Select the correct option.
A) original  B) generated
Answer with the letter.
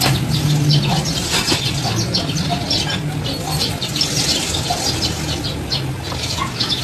A